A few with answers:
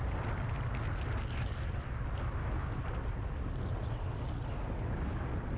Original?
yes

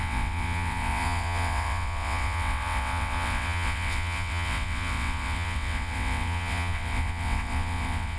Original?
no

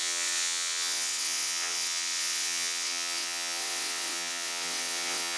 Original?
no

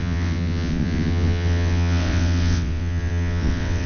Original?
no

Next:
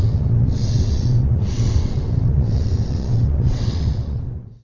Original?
no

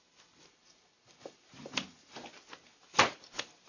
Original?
yes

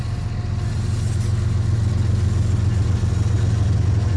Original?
yes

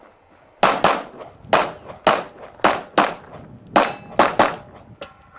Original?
yes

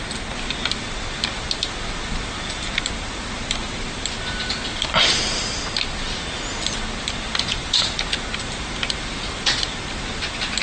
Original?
yes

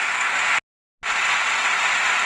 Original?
yes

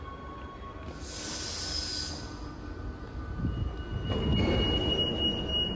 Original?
yes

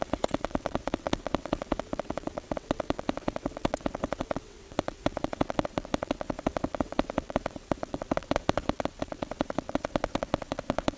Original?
no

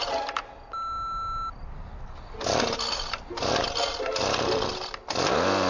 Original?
yes